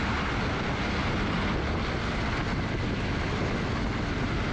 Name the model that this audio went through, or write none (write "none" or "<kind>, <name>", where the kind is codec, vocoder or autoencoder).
none